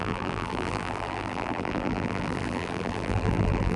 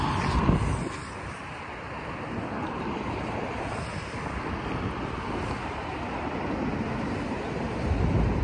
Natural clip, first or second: second